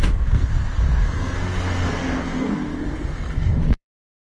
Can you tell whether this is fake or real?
fake